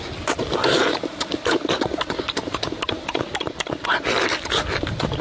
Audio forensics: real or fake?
real